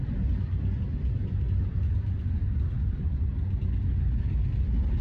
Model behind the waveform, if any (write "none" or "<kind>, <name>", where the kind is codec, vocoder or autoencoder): none